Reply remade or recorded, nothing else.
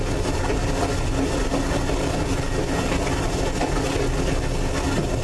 recorded